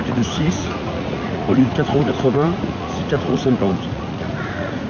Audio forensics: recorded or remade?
remade